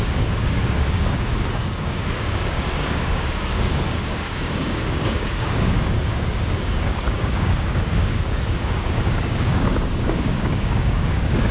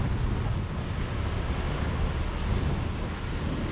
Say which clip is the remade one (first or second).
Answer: first